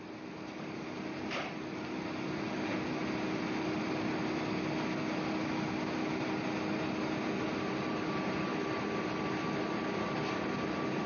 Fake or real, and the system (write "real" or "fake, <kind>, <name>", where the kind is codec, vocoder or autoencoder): real